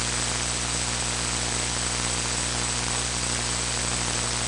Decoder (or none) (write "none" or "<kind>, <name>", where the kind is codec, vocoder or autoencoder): none